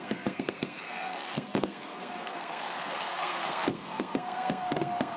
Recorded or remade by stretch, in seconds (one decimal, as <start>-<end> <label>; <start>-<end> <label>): 0.0-5.2 remade